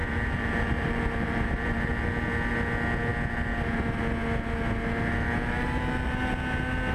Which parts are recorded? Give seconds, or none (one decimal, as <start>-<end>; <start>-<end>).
1.9-6.9